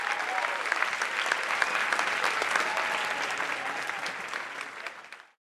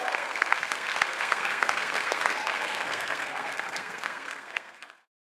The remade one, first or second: second